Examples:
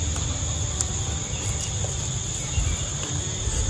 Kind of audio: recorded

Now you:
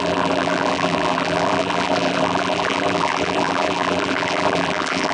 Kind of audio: remade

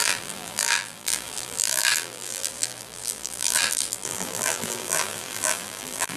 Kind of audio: remade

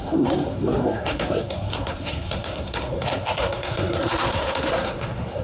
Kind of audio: remade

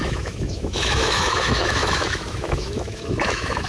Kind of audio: remade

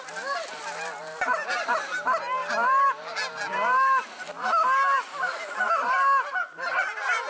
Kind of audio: recorded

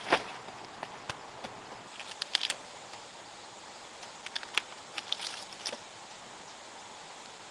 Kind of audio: recorded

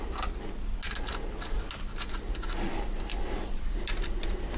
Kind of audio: recorded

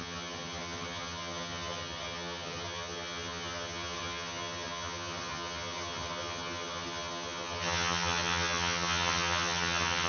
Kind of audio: remade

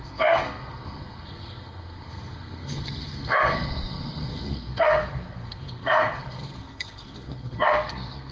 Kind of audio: remade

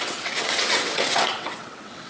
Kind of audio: remade